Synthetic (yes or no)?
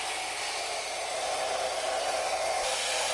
no